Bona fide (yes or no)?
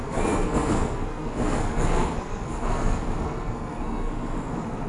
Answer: no